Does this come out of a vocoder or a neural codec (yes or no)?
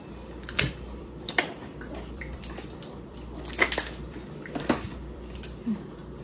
yes